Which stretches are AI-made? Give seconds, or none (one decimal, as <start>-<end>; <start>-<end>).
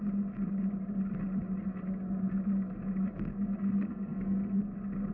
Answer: 3.3-4.6